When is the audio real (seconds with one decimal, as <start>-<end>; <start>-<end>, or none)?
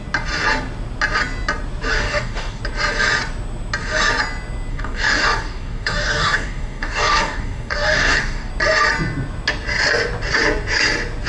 0.0-1.9; 2.6-4.7; 8.5-11.3